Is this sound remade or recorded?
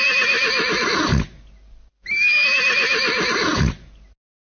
recorded